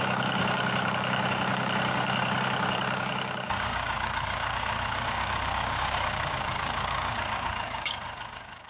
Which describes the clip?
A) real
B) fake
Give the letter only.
B